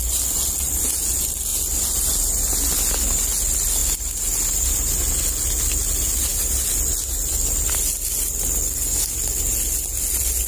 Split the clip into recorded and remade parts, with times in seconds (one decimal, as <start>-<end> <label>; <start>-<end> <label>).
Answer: 0.0-10.5 recorded